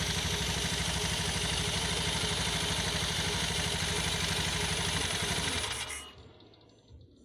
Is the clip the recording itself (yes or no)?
yes